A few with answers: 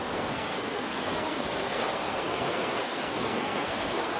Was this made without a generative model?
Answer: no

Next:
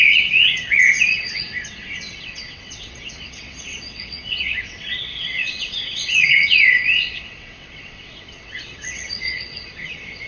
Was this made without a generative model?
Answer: no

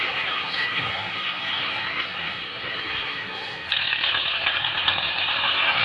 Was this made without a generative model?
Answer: no